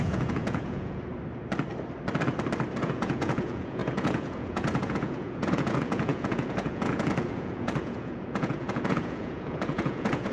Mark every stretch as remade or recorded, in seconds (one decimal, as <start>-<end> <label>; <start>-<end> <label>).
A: 0.0-1.1 remade; 1.1-2.8 recorded; 2.8-10.3 remade